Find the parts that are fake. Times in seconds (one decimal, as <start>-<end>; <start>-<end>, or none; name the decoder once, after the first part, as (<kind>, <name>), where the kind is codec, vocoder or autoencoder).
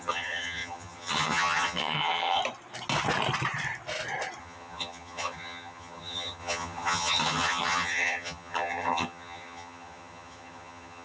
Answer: 0.0-2.4 (vocoder, HiFi-GAN); 4.4-11.0